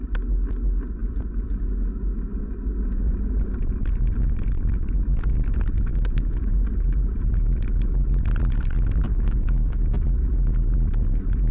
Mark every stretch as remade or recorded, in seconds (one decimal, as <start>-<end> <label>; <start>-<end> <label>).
0.0-5.9 recorded; 5.9-6.7 remade; 6.7-9.1 recorded; 9.1-9.8 remade; 9.8-11.5 recorded